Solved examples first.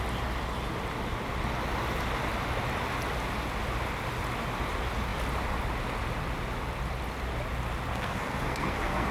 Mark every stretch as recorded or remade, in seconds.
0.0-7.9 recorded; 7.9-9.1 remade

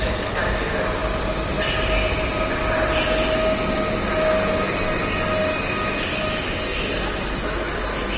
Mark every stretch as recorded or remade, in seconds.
0.0-8.2 recorded